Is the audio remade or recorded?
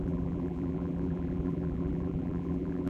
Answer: remade